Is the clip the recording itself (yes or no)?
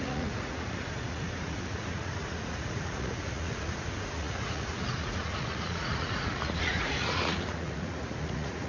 no